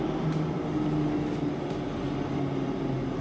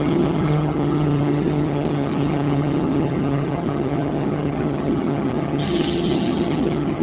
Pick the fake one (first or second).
second